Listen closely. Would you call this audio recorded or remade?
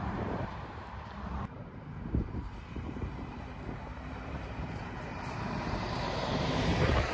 remade